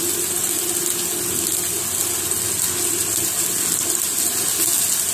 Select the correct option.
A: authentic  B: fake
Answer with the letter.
A